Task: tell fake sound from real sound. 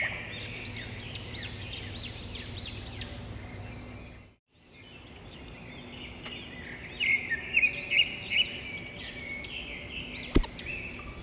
real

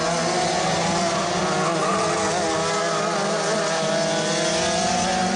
real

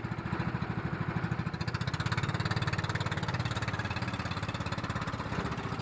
real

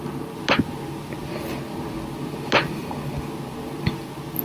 real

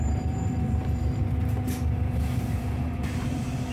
fake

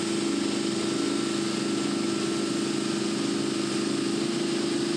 real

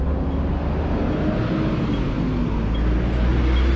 real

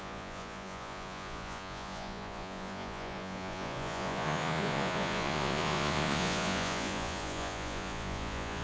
fake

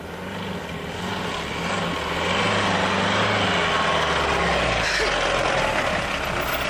real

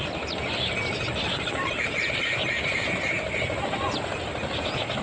real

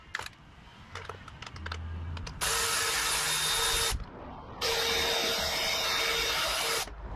real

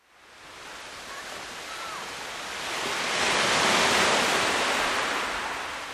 real